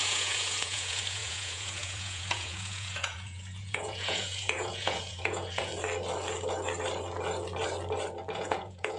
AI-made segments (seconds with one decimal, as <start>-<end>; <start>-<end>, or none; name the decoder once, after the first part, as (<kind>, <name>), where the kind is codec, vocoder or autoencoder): 0.0-5.7 (vocoder, Vocos); 8.3-9.0